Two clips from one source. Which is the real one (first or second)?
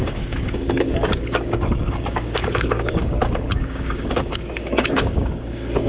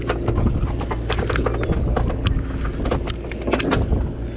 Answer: second